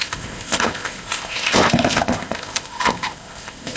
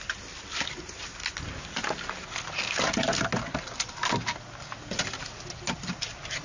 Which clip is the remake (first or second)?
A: first